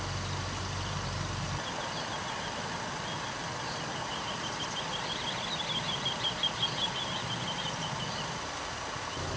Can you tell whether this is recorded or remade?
recorded